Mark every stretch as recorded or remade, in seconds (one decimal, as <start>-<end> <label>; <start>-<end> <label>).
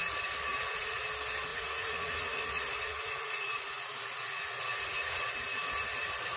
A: 0.0-0.5 recorded; 0.5-1.0 remade; 1.0-1.5 recorded; 1.5-5.3 remade; 5.3-6.4 recorded